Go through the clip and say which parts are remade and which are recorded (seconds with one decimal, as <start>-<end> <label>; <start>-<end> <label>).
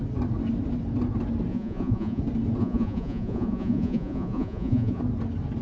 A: 0.0-1.5 recorded; 1.5-2.2 remade; 2.2-2.6 recorded; 2.6-5.0 remade; 5.0-5.6 recorded